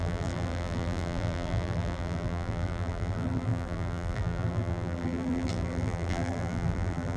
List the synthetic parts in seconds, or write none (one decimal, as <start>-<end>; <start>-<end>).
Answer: 0.0-7.2

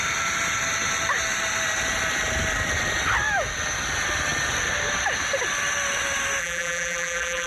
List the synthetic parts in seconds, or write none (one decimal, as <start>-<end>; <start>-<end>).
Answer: 6.4-7.5

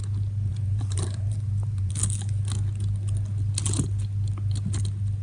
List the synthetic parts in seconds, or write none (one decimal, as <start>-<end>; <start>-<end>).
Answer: 0.5-1.9

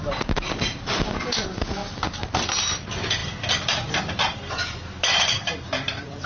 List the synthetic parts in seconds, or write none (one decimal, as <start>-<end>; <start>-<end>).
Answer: 0.0-1.8; 2.6-6.3